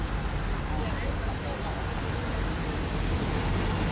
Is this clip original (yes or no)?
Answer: yes